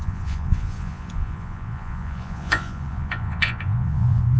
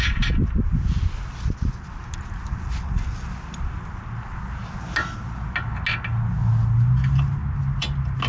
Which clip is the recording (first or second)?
second